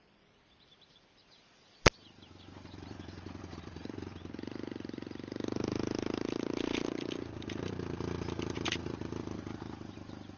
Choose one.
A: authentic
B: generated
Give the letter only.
B